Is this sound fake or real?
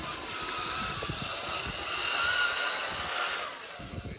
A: real